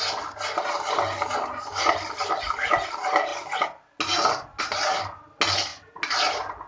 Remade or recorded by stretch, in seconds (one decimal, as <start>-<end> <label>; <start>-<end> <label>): 0.0-6.7 recorded